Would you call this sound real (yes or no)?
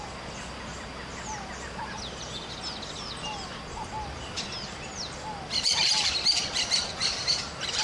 yes